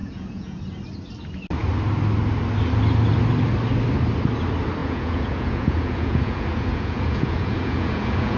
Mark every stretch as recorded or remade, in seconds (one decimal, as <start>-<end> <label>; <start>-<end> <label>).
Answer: 0.0-0.6 remade; 0.6-4.8 recorded; 4.8-8.4 remade